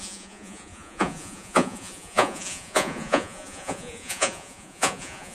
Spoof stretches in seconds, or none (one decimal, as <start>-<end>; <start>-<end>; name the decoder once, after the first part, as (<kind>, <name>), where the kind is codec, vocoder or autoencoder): 0.0-5.3 (vocoder, Vocos)